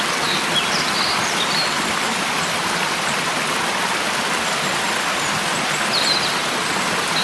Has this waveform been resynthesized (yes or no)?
no